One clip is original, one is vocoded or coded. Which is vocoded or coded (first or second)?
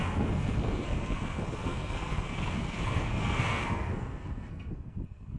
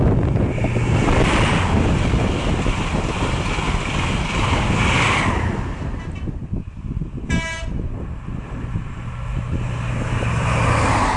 first